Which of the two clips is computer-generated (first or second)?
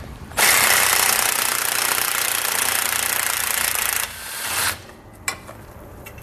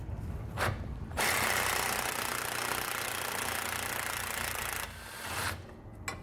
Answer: first